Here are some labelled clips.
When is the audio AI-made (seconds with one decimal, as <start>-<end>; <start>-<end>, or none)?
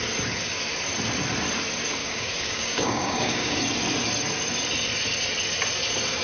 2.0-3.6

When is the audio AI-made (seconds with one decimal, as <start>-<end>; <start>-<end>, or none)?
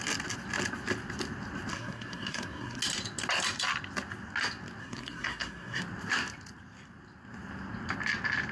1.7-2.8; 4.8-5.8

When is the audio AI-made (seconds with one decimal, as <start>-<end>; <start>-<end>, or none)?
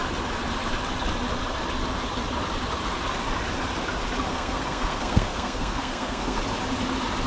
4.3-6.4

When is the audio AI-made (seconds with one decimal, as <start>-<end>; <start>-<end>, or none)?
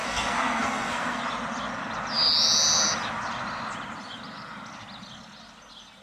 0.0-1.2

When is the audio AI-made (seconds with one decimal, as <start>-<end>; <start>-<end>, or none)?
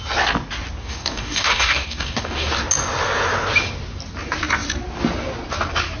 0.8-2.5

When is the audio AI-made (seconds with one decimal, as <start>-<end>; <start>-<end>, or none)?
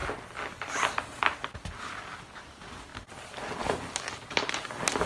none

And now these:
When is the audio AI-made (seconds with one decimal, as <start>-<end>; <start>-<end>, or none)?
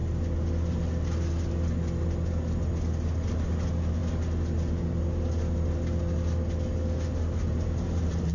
7.4-8.3